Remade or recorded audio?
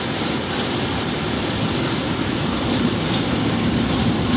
remade